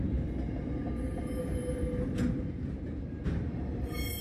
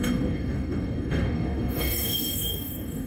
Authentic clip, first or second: first